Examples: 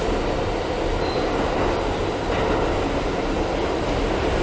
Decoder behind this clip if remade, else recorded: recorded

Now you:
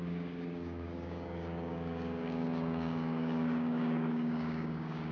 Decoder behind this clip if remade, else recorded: remade, codec, DAC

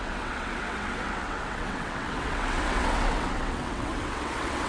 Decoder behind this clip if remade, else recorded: remade, vocoder, WaveNeXt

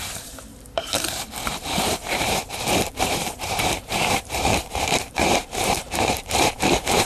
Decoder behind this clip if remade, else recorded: remade, vocoder, BigVGAN v2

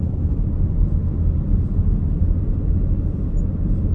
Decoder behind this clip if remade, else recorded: recorded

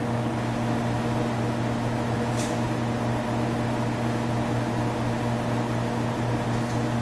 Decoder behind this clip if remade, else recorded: recorded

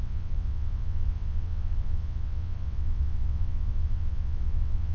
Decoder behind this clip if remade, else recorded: remade, vocoder, WaveNeXt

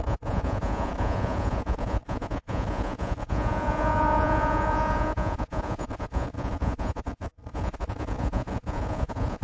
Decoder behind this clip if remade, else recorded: remade, vocoder, Vocos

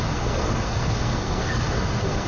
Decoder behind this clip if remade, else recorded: remade, codec, SNAC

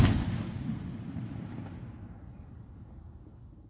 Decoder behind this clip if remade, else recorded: recorded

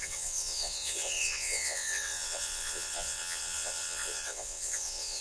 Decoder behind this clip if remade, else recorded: remade, vocoder, WaveNeXt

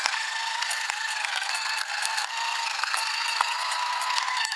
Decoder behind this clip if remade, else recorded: remade, codec, SNAC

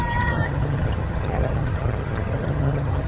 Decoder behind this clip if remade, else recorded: remade, vocoder, HiFi-GAN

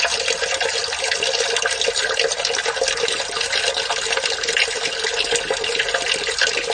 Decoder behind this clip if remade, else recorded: recorded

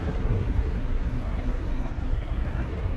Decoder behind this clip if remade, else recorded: remade, codec, SNAC